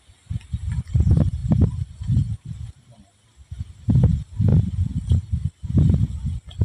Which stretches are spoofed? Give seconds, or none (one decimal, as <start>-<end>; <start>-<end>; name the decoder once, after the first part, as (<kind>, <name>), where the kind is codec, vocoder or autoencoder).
none

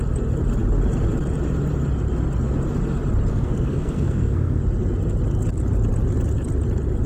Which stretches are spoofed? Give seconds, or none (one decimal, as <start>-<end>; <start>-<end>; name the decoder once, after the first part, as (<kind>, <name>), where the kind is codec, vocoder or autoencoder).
3.3-4.6 (codec, SNAC)